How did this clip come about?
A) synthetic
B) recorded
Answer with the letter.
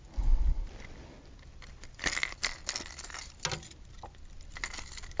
B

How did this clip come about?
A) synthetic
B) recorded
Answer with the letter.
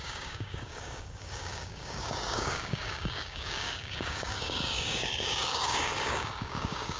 A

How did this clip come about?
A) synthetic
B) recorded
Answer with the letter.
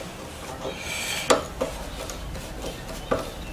B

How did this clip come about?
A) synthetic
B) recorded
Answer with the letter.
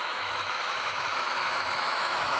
A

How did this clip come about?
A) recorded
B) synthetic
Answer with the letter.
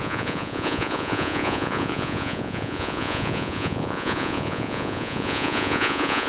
B